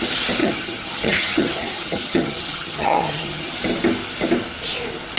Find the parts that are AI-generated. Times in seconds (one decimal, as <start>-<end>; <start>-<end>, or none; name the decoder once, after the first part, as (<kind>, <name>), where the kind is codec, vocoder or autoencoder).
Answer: 0.4-3.5 (vocoder, HiFi-GAN)